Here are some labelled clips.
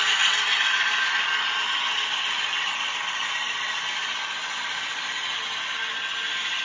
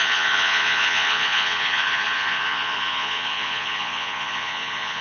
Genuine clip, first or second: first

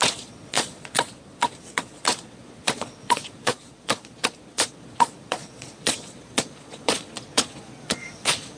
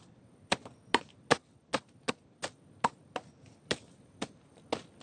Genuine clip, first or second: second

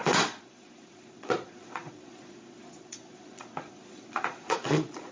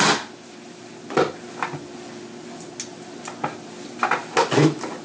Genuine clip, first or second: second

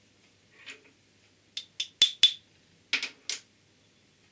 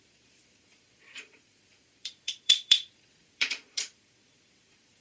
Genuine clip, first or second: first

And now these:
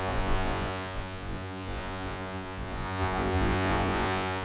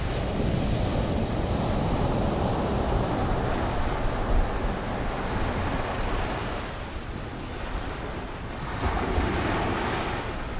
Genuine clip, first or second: second